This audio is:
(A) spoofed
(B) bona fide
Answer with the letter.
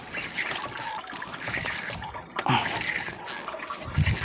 B